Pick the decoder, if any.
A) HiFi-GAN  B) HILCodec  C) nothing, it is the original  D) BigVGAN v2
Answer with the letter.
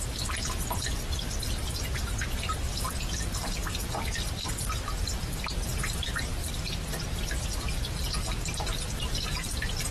D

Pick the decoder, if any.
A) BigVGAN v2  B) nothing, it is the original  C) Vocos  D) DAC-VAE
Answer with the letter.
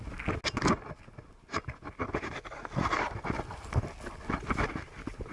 B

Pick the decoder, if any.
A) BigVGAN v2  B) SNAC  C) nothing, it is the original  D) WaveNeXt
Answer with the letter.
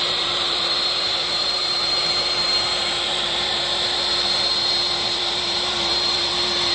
A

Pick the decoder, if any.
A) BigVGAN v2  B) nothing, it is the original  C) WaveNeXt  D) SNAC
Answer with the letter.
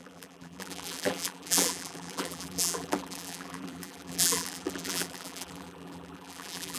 A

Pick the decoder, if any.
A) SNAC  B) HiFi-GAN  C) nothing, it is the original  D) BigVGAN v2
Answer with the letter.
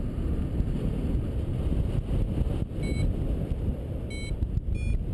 C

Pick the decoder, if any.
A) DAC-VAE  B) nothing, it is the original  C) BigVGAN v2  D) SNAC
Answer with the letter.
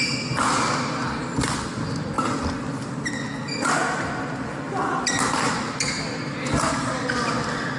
B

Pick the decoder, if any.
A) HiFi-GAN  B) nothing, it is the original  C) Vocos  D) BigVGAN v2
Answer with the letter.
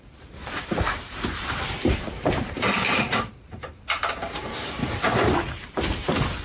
D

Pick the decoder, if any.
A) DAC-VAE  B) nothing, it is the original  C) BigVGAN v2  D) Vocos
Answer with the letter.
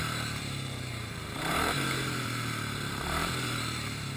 C